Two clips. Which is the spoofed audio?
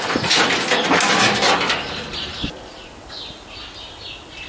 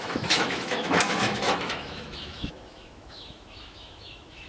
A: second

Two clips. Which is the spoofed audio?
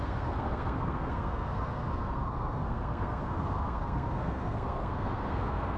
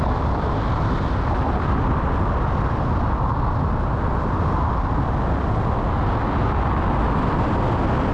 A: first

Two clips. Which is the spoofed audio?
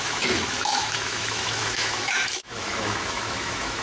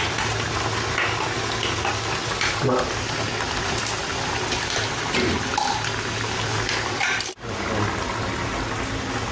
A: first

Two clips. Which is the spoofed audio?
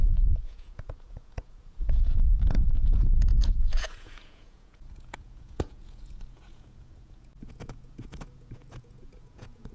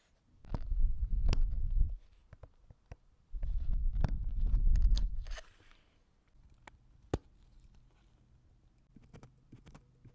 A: first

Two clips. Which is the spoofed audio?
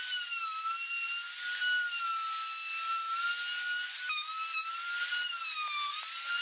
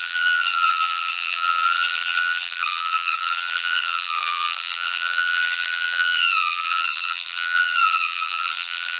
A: second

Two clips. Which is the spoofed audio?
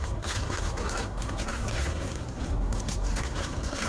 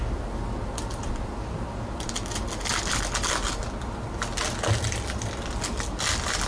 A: first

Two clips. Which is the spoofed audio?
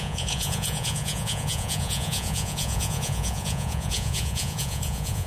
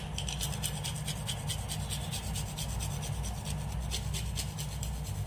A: first